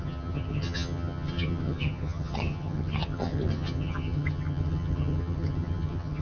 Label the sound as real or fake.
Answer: fake